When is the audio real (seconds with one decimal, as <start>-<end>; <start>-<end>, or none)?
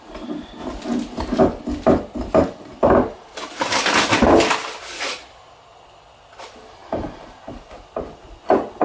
0.0-8.8